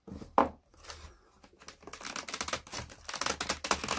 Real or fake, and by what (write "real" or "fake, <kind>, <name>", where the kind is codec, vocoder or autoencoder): real